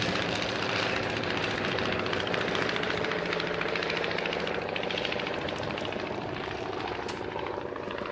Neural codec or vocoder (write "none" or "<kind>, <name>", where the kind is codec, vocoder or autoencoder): vocoder, BigVGAN v2